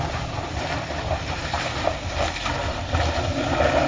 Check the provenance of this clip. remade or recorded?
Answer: recorded